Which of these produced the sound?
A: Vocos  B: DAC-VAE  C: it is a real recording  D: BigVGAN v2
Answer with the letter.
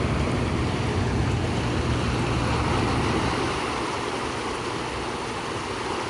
C